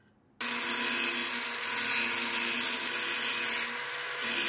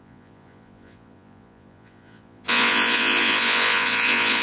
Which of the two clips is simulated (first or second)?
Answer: second